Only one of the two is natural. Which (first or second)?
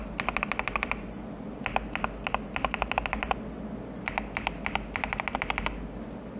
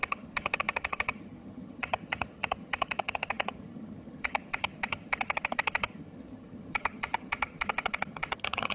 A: first